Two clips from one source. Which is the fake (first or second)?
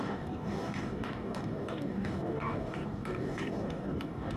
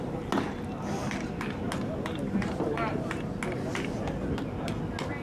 first